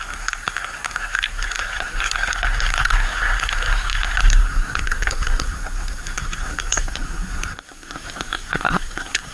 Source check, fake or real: fake